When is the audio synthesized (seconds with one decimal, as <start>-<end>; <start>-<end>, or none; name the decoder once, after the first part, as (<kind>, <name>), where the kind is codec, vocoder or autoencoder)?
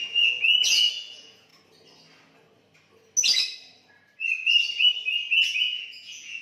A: 0.0-1.5 (vocoder, Vocos); 5.3-6.4